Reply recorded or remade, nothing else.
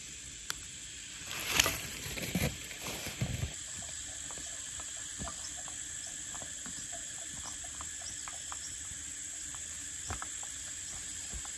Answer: remade